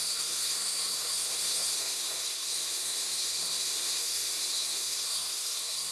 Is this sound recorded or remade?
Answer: remade